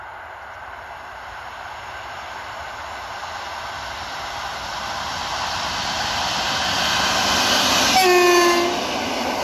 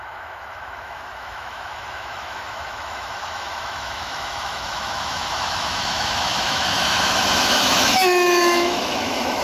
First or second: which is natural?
first